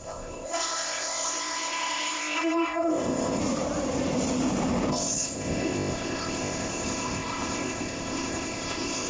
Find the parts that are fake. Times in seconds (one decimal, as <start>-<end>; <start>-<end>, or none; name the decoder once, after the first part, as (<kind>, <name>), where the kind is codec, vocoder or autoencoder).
0.0-3.4 (codec, ZipCodec); 4.9-9.1